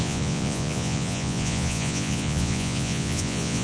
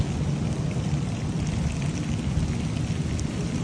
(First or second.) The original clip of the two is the second